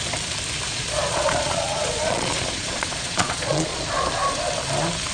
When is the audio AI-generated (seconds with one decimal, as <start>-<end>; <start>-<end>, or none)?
0.7-3.8